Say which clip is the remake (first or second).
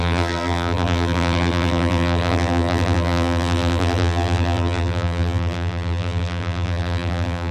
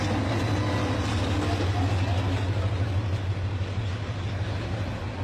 first